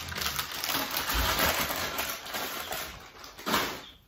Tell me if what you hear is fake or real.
real